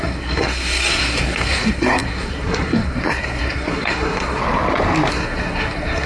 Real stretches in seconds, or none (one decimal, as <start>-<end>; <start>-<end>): 4.4-5.1